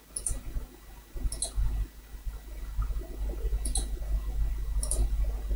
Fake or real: real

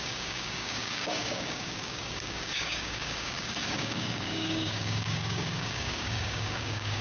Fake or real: fake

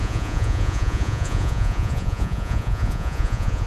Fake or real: fake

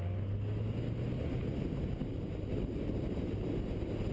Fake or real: real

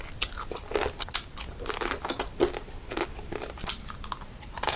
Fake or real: real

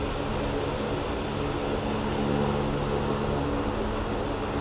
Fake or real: real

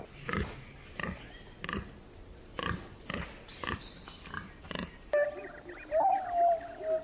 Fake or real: real